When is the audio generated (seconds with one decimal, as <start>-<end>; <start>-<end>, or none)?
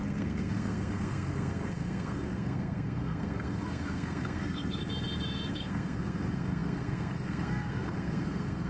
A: 0.0-4.8; 5.5-8.7